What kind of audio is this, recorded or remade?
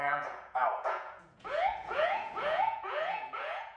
remade